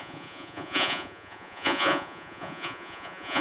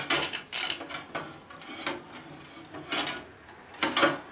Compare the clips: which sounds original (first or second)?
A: second